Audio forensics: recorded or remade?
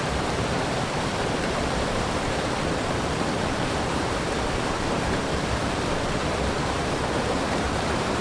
remade